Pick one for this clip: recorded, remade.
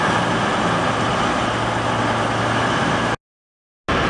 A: recorded